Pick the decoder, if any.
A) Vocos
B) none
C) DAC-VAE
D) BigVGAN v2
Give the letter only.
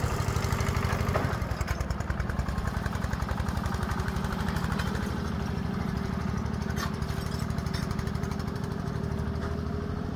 D